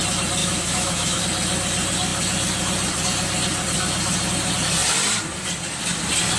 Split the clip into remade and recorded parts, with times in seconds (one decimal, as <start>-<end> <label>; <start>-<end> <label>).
0.0-0.4 recorded; 0.4-1.2 remade; 1.2-6.4 recorded